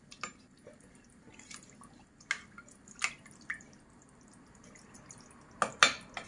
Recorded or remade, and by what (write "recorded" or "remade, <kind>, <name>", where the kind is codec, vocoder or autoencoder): recorded